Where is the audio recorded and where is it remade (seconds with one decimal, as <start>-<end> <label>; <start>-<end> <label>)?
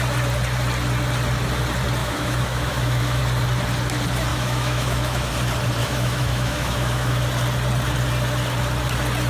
0.0-2.0 recorded; 2.0-3.2 remade; 3.2-4.3 recorded; 4.3-5.3 remade; 5.3-5.8 recorded; 5.8-7.2 remade; 7.2-9.3 recorded